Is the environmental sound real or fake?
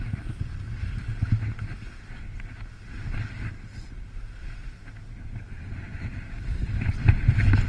real